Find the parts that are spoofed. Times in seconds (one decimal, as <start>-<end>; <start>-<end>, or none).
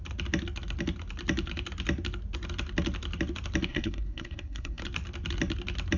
3.7-4.8